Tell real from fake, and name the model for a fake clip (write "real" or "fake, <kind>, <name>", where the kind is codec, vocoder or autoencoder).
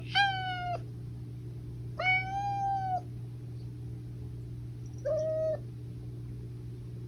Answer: real